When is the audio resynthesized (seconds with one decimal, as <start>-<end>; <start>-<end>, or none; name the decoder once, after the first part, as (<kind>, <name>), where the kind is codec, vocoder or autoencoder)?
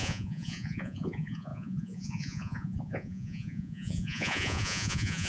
0.0-5.3 (vocoder, Vocos)